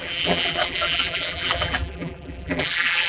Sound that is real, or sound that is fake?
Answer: fake